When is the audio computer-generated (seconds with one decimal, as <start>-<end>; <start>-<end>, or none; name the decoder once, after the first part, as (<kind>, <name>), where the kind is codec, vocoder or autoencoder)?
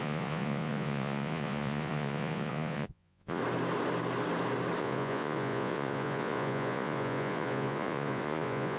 0.0-3.4 (vocoder, Vocos); 4.8-8.8